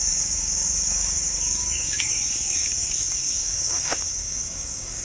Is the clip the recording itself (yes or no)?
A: no